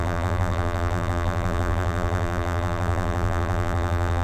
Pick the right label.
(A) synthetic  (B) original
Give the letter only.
A